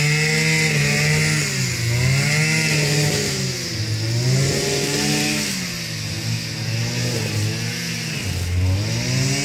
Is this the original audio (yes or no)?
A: yes